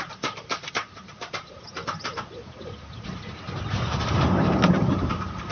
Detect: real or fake fake